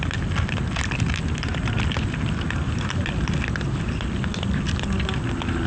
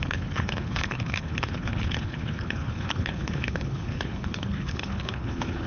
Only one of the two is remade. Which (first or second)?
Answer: second